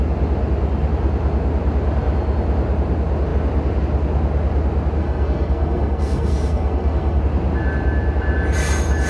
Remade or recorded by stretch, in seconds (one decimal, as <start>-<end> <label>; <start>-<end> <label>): 0.0-5.0 recorded; 5.0-7.2 remade; 7.2-9.1 recorded